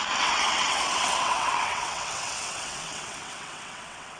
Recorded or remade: remade